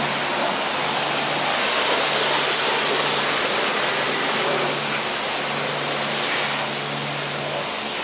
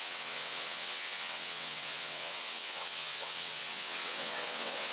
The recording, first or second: first